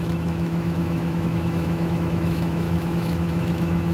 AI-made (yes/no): yes